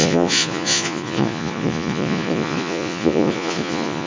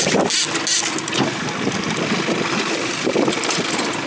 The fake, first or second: first